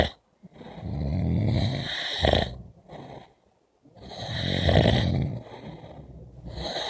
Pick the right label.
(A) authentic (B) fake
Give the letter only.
A